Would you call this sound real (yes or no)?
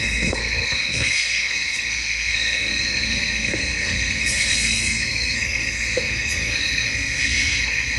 no